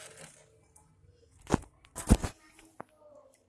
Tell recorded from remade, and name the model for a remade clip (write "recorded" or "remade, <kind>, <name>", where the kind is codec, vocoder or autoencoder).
recorded